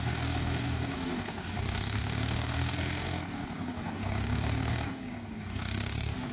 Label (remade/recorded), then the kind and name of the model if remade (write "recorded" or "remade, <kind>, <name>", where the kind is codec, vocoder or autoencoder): remade, codec, DAC